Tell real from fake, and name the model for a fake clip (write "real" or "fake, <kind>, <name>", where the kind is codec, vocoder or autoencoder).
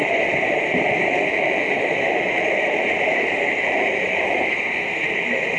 fake, vocoder, BigVGAN v2